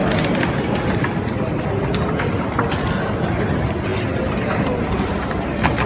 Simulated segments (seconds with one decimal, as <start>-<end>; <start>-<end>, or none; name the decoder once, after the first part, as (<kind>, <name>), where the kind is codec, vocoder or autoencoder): none